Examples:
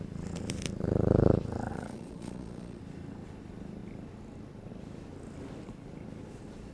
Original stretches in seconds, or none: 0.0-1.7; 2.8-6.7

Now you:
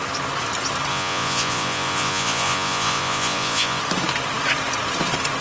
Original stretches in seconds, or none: 0.0-0.9; 3.8-5.4

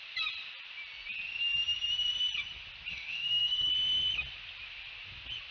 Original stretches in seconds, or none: 0.0-2.9; 3.7-5.5

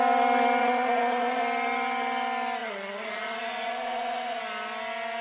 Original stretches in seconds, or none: 0.0-0.6; 1.4-2.6; 4.4-5.2

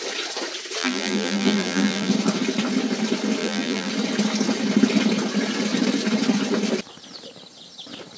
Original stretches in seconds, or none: 0.0-0.8; 2.1-3.4; 3.9-8.2

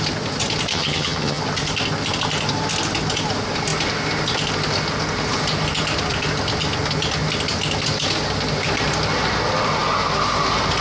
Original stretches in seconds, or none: 0.0-0.7; 1.4-10.8